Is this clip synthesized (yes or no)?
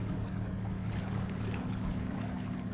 yes